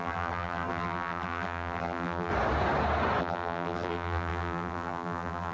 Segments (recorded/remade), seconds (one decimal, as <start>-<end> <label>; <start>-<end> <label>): 0.0-2.3 remade; 2.3-3.2 recorded; 3.2-5.5 remade